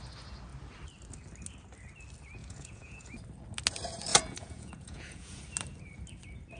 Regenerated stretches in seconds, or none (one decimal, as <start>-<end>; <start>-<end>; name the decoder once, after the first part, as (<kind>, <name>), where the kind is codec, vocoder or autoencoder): 2.4-3.1 (vocoder, Vocos); 4.1-5.4